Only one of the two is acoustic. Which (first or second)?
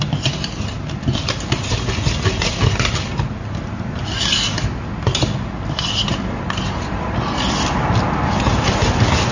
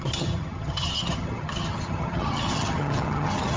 first